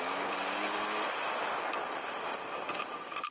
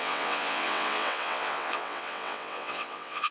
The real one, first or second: first